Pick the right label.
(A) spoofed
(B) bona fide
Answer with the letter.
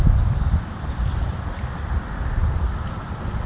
B